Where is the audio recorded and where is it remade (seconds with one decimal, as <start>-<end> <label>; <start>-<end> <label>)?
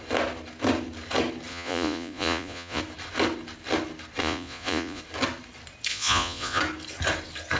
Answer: 0.0-1.5 recorded; 1.5-2.8 remade; 2.8-4.2 recorded; 4.2-5.0 remade; 5.0-5.9 recorded; 5.9-6.6 remade; 6.6-7.6 recorded